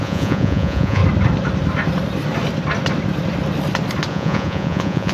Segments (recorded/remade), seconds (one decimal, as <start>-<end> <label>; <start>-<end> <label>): 0.0-1.0 remade; 1.0-4.1 recorded; 4.1-5.1 remade